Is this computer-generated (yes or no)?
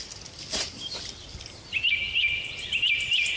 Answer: no